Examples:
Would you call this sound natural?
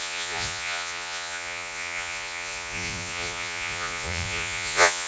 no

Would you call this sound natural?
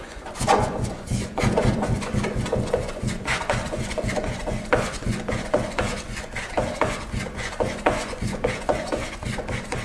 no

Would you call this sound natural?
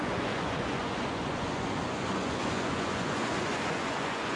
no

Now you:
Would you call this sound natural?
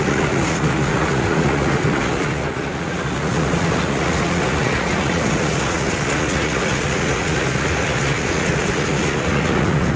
no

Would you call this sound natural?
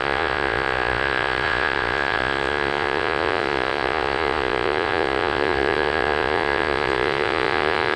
no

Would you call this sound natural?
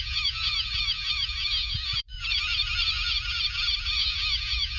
no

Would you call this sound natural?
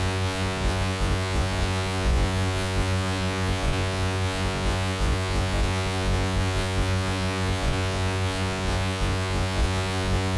no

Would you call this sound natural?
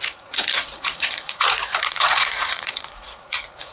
no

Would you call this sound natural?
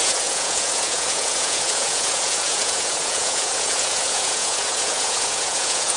no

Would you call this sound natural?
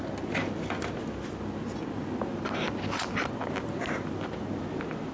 yes